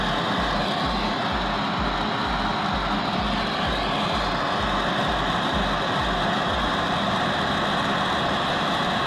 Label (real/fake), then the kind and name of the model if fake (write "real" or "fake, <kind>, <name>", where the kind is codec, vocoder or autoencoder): real